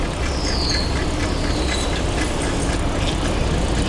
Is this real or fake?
real